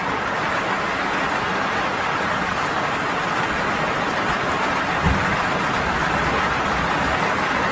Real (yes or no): yes